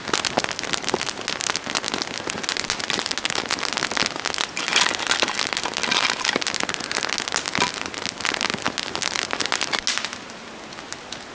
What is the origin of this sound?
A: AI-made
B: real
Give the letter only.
B